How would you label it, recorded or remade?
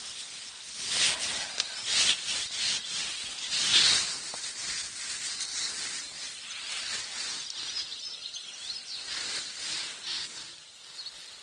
recorded